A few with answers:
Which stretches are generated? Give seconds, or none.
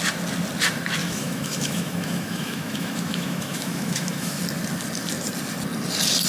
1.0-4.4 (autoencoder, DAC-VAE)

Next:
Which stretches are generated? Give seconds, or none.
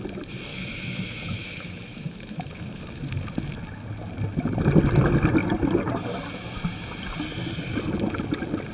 0.5-3.0 (autoencoder, DAC-VAE)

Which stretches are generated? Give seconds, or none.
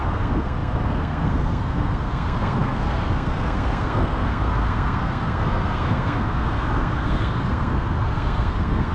0.0-8.9 (codec, SNAC)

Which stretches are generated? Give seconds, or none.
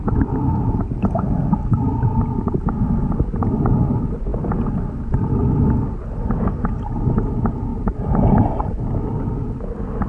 7.7-8.8 (vocoder, BigVGAN v2)